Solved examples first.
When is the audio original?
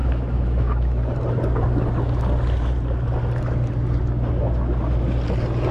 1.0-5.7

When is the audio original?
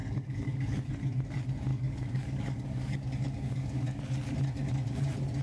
0.9-1.7; 4.0-5.4